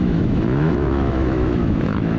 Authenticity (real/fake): fake